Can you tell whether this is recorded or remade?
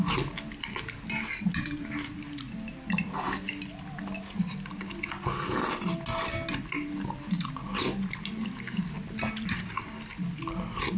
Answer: recorded